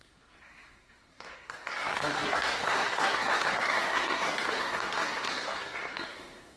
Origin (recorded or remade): remade